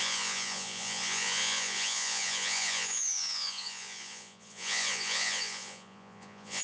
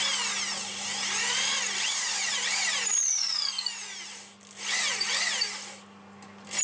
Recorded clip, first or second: second